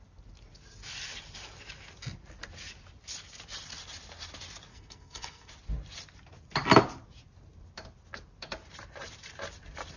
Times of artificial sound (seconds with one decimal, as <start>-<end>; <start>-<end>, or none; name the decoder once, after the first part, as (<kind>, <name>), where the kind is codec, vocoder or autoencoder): 4.7-5.5 (codec, SNAC)